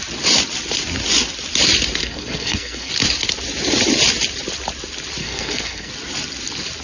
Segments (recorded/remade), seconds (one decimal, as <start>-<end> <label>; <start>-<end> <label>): 0.0-2.0 recorded; 2.0-2.9 remade; 2.9-5.2 recorded; 5.2-5.9 remade; 5.9-6.8 recorded